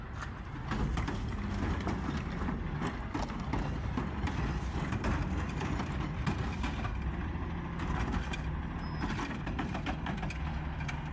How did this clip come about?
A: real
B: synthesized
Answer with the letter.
A